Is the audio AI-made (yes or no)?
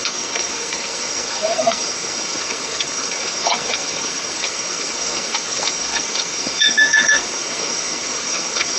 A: yes